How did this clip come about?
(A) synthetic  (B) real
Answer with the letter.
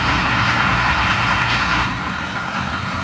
A